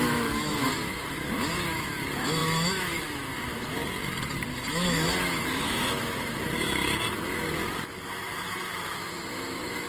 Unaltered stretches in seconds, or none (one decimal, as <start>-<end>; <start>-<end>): 3.8-4.7